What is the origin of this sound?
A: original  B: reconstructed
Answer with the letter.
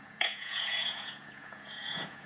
B